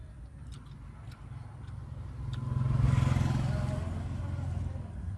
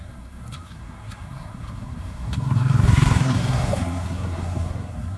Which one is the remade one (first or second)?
second